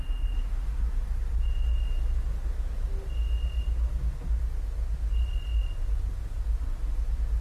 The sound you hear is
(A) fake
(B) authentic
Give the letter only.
B